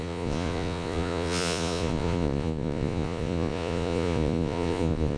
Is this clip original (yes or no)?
no